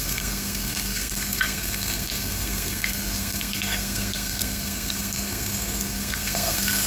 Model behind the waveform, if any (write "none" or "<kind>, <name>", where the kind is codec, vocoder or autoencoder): codec, SNAC